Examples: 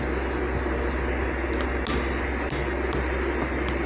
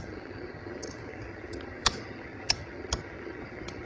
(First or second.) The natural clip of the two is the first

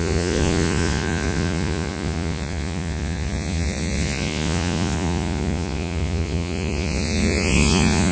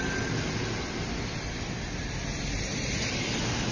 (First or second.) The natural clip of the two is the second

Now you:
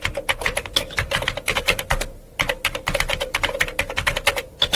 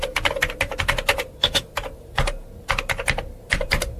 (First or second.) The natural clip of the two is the first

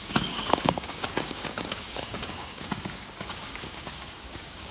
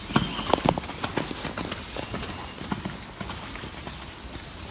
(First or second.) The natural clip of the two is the second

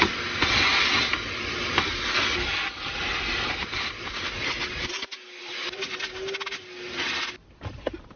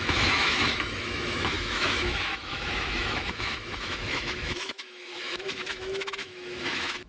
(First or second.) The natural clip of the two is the first